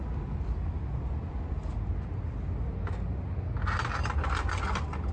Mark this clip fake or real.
real